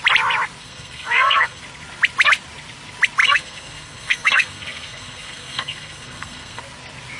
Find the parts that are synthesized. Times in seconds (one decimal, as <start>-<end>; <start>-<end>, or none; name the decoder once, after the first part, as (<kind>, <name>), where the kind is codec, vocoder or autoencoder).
0.6-1.6 (codec, SNAC); 3.2-6.6